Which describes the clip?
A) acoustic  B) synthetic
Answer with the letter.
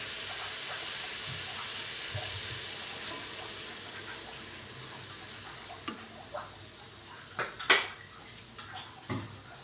A